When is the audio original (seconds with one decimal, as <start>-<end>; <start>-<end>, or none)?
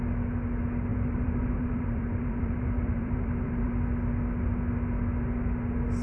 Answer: 0.0-0.9; 3.7-6.0